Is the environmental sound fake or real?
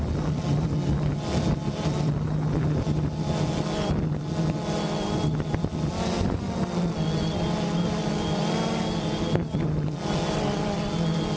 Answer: real